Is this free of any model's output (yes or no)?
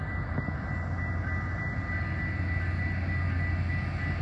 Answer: yes